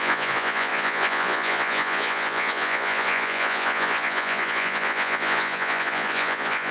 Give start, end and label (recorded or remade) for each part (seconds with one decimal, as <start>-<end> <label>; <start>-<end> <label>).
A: 0.0-6.7 remade